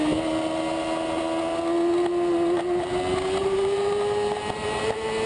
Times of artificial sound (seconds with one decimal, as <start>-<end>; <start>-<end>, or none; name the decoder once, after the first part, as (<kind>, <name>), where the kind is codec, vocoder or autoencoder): 3.4-4.4 (vocoder, BigVGAN v2)